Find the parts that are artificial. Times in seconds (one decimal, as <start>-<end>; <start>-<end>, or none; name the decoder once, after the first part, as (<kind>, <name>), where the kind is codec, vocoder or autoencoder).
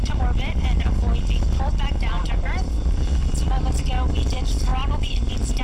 none